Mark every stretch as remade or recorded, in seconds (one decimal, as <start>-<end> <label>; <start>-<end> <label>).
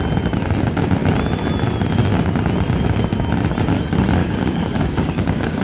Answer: 0.0-4.2 recorded; 4.2-5.6 remade